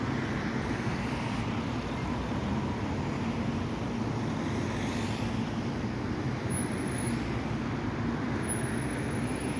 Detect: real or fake real